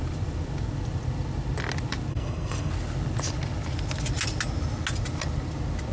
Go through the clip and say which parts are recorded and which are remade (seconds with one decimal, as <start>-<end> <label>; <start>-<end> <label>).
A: 0.0-2.1 recorded; 2.1-2.7 remade; 2.7-5.9 recorded